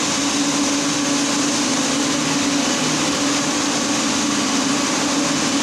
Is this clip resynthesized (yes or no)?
no